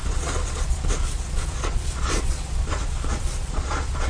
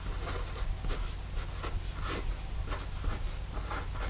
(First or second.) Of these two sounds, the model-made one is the first